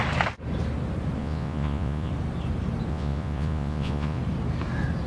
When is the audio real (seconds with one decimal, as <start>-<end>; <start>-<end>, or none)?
0.0-1.2; 2.1-2.9; 4.2-5.1